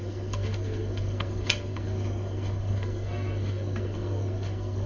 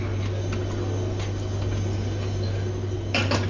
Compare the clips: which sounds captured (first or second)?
second